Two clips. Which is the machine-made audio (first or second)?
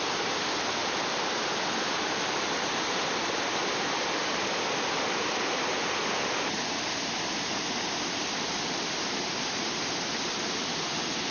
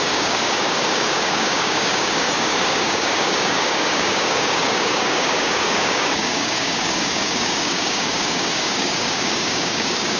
second